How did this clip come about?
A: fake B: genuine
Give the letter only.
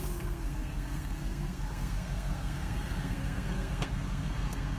A